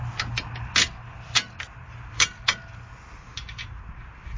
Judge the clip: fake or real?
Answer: real